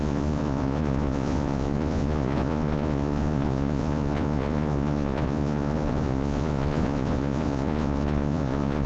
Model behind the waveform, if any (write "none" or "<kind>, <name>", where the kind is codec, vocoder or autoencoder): vocoder, Vocos